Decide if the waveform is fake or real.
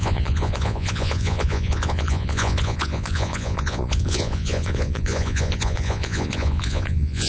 fake